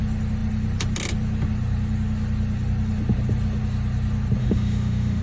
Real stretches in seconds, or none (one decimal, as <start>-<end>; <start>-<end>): 0.0-4.4